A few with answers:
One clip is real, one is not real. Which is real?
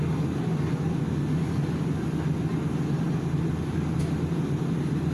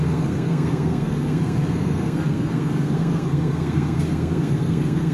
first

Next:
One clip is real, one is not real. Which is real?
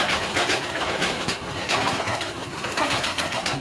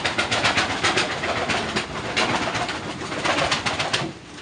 second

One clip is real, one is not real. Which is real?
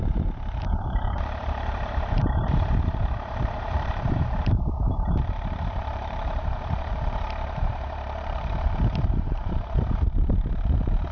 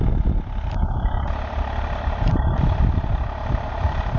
second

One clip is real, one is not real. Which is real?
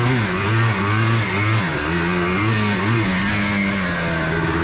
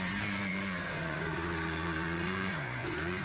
first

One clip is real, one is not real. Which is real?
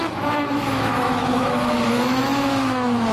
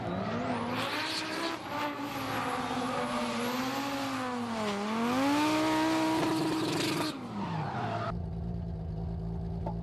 second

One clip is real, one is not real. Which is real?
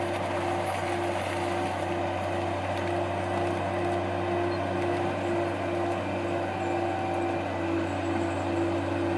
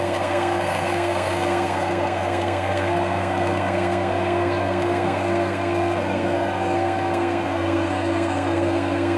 first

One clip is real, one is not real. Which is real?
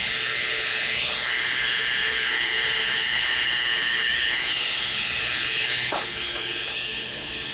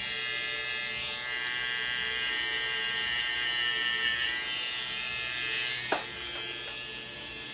second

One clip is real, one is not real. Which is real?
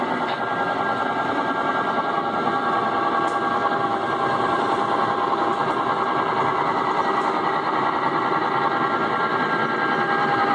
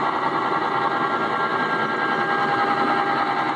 second